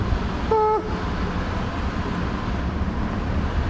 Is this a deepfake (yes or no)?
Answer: no